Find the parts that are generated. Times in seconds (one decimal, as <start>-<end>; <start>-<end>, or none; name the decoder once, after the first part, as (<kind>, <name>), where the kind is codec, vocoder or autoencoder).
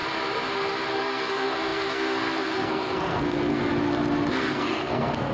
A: 0.9-3.7 (codec, SNAC); 4.3-5.3